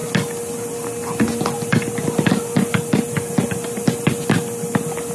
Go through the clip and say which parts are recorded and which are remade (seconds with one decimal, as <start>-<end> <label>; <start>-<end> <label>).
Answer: 0.0-5.1 recorded